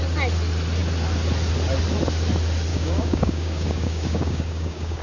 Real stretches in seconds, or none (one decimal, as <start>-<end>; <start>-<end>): 0.0-2.7